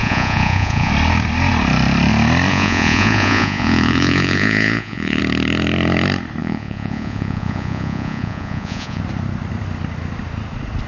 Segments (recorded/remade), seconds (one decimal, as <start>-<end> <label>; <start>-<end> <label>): 0.0-0.9 remade; 0.9-2.5 recorded; 2.5-5.2 remade; 5.2-6.4 recorded; 6.4-9.0 remade; 9.0-10.9 recorded

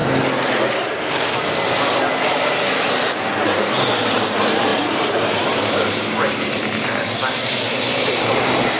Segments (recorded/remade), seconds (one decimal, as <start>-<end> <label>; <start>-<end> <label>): 0.0-2.3 recorded; 2.3-8.8 remade